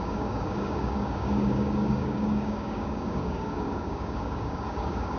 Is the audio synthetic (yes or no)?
yes